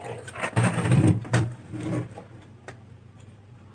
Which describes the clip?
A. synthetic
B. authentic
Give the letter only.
A